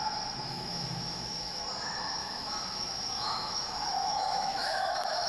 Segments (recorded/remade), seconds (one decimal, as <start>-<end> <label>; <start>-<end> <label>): 0.0-0.5 recorded; 0.5-1.6 remade; 1.6-2.2 recorded; 2.2-5.3 remade